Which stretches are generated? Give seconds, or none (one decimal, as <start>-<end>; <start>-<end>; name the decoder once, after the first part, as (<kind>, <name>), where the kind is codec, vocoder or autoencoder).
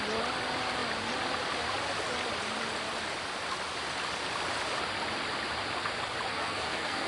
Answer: 6.3-7.1 (codec, SNAC)